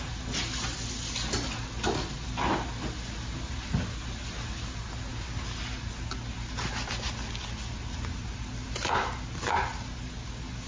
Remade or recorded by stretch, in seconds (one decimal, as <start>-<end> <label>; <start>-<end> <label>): 0.0-10.7 recorded